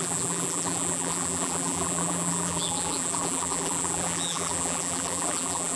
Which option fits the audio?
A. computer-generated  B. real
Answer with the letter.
A